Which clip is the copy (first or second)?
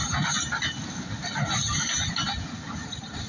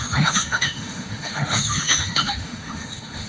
second